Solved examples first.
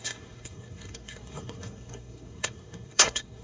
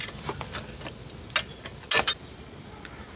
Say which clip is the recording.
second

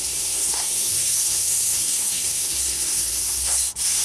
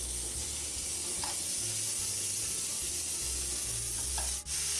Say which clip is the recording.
second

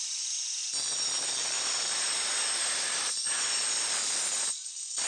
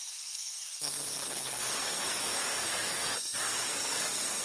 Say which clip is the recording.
first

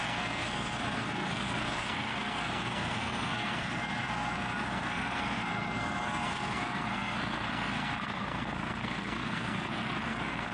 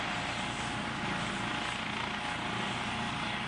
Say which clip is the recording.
second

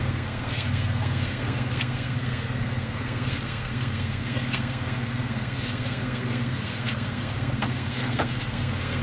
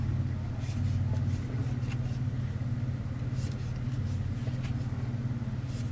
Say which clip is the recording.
second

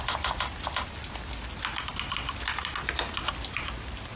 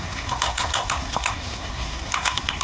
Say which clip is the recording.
first